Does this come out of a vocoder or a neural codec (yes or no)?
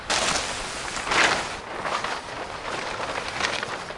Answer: no